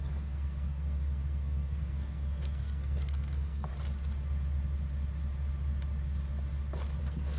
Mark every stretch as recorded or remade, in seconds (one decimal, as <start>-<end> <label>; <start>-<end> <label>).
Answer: 0.0-3.7 remade; 3.7-7.0 recorded; 7.0-7.4 remade